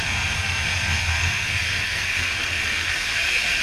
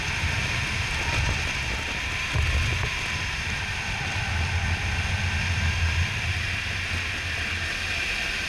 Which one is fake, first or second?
first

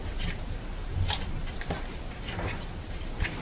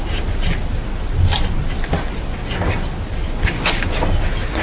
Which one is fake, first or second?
first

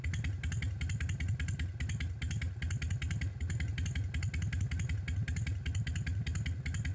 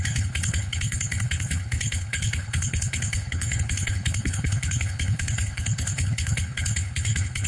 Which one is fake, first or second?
second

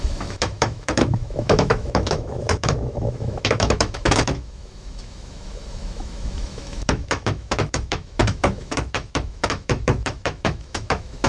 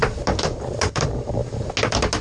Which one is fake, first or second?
first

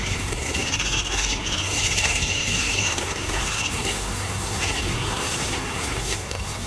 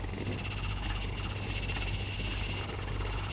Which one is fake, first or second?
first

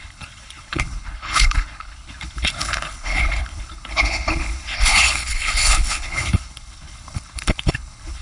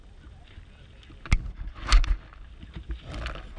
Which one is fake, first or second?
first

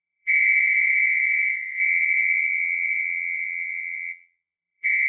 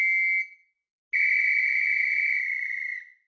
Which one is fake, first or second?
first